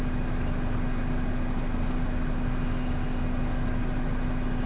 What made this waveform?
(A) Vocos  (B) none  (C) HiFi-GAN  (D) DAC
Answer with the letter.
B